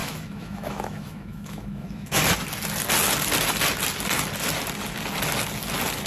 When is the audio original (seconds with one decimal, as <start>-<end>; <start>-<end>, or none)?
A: 2.2-6.1